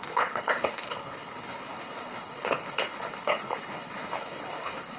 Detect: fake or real fake